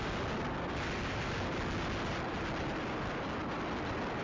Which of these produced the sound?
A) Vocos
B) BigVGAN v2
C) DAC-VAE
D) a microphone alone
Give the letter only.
D